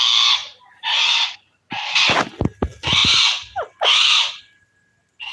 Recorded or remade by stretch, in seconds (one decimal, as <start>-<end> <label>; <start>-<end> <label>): 0.0-0.4 recorded; 0.4-1.9 remade; 1.9-3.0 recorded; 3.0-4.4 remade; 4.4-5.3 recorded